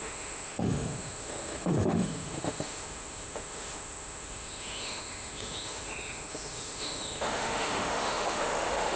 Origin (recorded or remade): remade